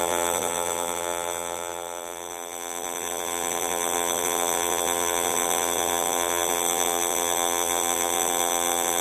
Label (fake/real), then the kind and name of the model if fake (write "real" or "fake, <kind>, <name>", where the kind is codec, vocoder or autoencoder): fake, vocoder, BigVGAN v2